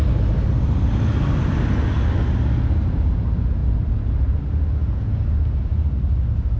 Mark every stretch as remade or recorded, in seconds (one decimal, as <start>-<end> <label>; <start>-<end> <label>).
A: 0.0-4.8 recorded; 4.8-5.3 remade; 5.3-6.6 recorded

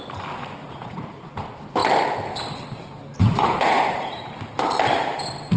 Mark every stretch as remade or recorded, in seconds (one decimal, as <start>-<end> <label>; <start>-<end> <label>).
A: 0.0-0.6 recorded; 0.6-1.4 remade; 1.4-3.2 recorded; 3.2-4.3 remade; 4.3-5.6 recorded

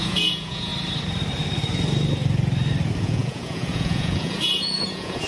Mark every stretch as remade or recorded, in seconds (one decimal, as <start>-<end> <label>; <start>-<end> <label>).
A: 0.0-0.7 remade; 0.7-3.0 recorded; 3.0-5.3 remade